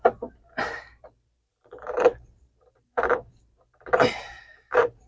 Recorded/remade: remade